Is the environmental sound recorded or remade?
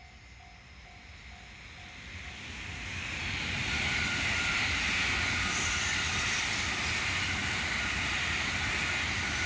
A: recorded